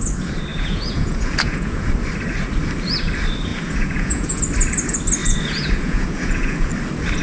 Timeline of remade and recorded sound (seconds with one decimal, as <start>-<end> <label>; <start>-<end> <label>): 0.0-0.5 recorded; 0.5-1.9 remade; 1.9-3.5 recorded; 3.5-4.4 remade; 4.4-5.2 recorded; 5.2-6.7 remade; 6.7-7.2 recorded